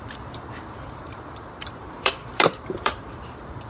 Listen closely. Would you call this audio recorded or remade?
remade